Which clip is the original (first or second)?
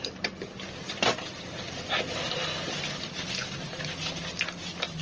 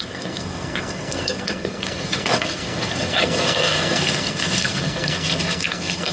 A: first